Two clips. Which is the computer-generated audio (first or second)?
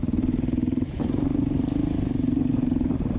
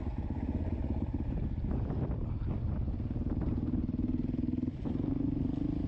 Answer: first